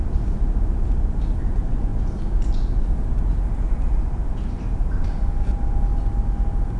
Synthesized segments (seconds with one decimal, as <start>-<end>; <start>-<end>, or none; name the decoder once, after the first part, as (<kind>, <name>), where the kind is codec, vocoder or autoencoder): 0.0-1.9 (vocoder, BigVGAN v2); 4.0-5.9